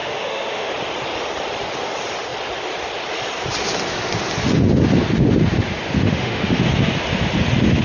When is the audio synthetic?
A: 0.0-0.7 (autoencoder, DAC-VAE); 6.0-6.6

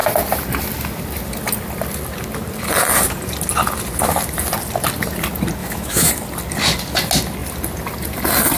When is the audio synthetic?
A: 5.6-6.1 (autoencoder, DAC-VAE)

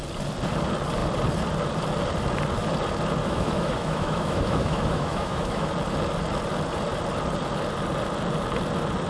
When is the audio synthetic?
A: 3.2-5.7 (autoencoder, DAC-VAE)

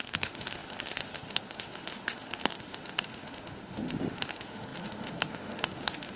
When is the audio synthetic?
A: 0.0-6.2 (autoencoder, DAC-VAE)